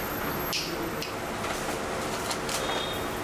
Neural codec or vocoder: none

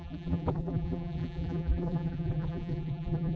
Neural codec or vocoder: vocoder, BigVGAN v2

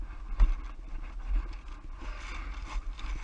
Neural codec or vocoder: none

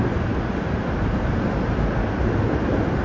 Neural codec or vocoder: none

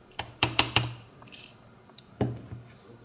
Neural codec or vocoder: vocoder, BigVGAN v2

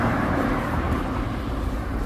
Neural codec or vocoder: vocoder, BigVGAN v2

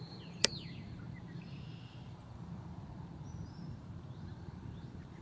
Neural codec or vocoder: vocoder, BigVGAN v2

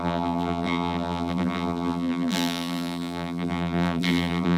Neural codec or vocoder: vocoder, BigVGAN v2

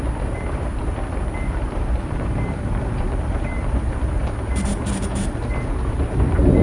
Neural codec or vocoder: vocoder, BigVGAN v2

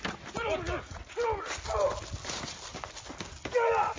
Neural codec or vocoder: none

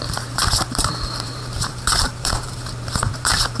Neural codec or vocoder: vocoder, BigVGAN v2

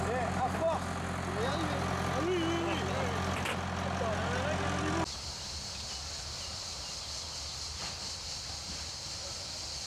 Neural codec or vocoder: none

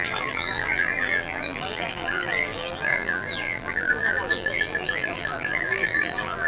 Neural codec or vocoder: vocoder, BigVGAN v2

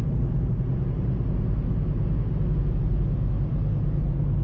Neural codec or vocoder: none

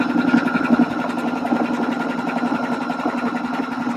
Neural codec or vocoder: none